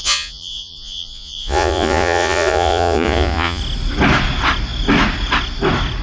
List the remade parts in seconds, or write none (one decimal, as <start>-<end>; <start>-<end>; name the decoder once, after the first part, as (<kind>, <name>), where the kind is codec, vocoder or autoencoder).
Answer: 0.0-3.6 (vocoder, Vocos)